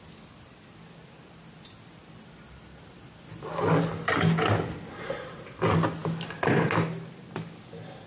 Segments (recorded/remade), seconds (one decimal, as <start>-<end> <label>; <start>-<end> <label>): 0.0-8.1 recorded